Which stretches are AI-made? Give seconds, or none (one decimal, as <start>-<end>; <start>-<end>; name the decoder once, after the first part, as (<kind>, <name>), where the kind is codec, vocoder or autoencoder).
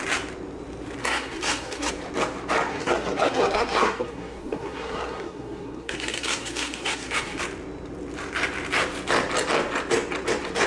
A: 1.0-1.9 (codec, SNAC); 2.7-7.4